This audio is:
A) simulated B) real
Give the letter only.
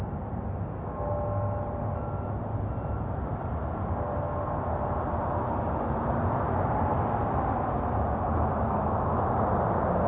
B